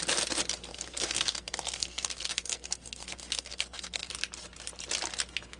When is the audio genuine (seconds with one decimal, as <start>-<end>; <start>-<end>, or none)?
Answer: 0.0-0.7; 4.1-5.6